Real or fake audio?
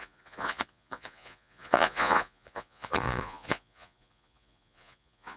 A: fake